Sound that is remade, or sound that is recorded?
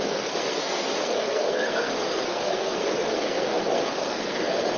remade